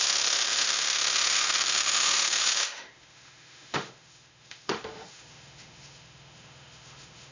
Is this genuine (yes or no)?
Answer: no